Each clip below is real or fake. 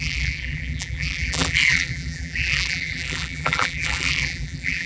fake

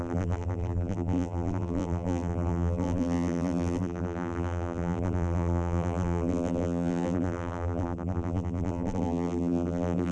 fake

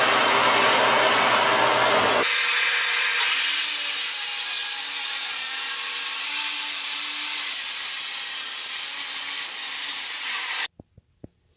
real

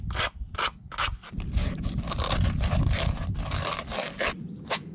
real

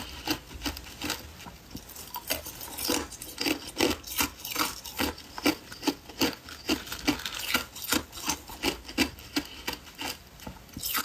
real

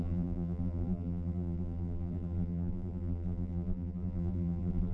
fake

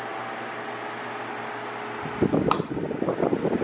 real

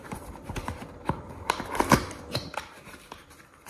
fake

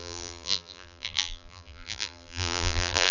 fake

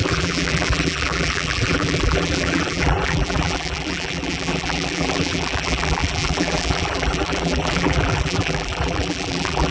fake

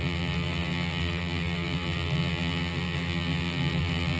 fake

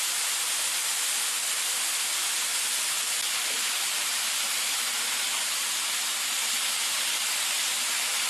real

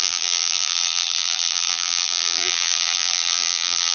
fake